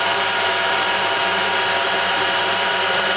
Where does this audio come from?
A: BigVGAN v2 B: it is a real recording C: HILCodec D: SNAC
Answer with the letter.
A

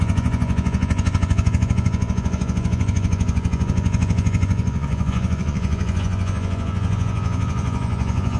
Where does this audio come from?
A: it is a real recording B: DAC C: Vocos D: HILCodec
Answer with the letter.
C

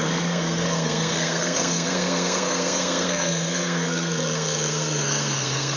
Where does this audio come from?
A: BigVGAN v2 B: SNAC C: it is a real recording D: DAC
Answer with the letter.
B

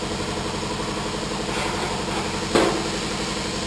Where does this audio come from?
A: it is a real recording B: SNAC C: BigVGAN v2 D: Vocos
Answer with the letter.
A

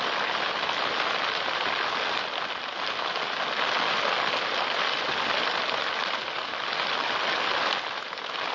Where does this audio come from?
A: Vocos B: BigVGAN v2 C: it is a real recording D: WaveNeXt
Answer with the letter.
C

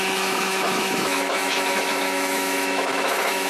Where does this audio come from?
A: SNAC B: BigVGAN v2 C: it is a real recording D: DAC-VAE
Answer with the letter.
D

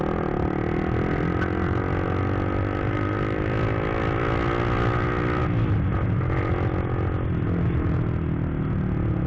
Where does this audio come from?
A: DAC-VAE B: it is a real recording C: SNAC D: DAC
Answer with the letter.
B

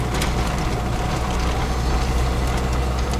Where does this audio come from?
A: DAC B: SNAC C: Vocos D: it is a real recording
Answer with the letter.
D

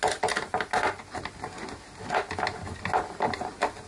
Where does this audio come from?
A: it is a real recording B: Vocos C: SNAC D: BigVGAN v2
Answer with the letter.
A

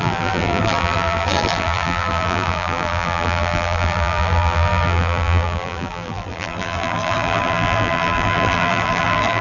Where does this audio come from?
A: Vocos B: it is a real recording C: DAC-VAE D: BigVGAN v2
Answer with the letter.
D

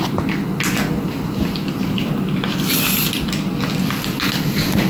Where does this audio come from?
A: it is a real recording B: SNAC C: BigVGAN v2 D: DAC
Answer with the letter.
A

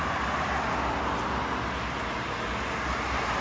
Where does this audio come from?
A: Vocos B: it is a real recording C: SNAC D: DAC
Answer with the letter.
B